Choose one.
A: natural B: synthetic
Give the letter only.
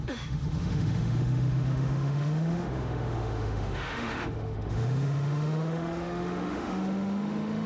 B